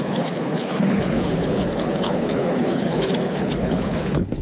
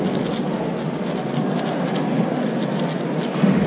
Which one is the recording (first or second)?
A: second